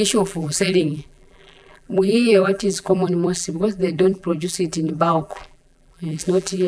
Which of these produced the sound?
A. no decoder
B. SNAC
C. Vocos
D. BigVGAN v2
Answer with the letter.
D